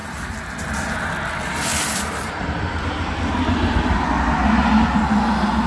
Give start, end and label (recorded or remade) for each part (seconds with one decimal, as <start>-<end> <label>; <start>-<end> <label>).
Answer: 0.0-0.5 remade; 0.5-1.7 recorded; 1.7-3.2 remade; 3.2-5.7 recorded